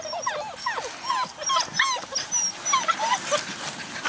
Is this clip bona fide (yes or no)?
yes